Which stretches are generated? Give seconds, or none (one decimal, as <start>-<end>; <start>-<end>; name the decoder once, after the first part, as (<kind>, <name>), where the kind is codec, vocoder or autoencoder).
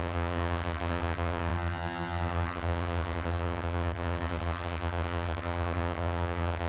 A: 0.0-6.7 (vocoder, HiFi-GAN)